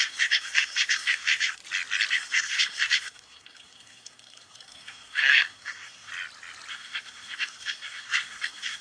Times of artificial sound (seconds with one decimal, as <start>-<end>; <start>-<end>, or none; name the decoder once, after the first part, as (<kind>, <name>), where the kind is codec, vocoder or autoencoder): 0.0-1.6 (codec, SNAC); 2.1-6.1; 6.7-8.8